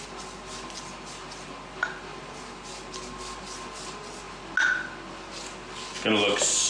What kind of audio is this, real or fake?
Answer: real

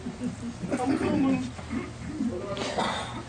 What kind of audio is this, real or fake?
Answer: real